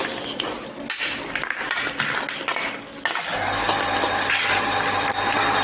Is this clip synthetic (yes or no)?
no